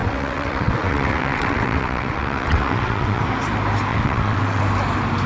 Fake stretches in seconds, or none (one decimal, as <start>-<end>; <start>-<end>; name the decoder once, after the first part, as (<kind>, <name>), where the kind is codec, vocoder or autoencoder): 0.0-3.2 (vocoder, WaveNeXt); 3.9-4.6